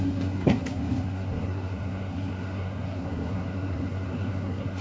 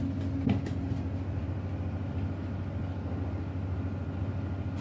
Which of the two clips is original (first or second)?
second